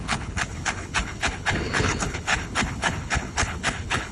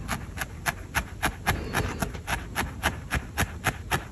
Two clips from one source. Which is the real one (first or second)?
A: second